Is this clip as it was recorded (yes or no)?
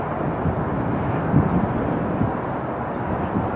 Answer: yes